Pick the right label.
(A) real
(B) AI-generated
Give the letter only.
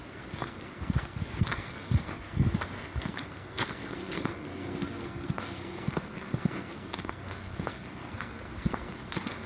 B